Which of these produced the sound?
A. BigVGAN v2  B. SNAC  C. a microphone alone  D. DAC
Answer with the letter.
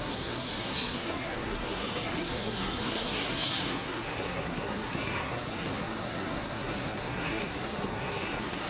B